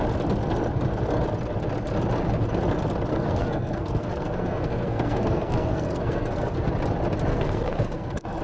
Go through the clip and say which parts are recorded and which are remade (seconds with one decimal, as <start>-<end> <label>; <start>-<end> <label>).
0.0-3.1 recorded; 3.1-6.7 remade; 6.7-7.3 recorded; 7.3-8.4 remade

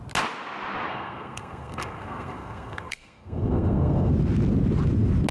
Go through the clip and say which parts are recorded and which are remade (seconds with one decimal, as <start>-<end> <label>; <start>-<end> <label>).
0.0-0.9 recorded; 0.9-4.1 remade; 4.1-5.3 recorded

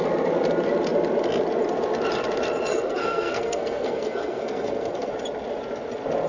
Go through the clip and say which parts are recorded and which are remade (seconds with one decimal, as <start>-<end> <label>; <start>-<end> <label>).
0.0-2.7 recorded; 2.7-5.1 remade; 5.1-6.3 recorded

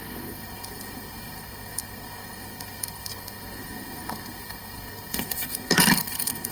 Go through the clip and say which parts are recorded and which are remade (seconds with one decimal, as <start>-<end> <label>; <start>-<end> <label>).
0.0-6.5 remade